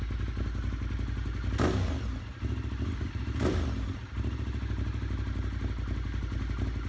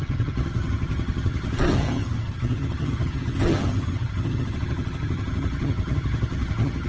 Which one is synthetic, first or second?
second